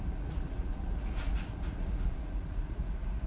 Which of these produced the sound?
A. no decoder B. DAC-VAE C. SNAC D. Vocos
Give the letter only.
D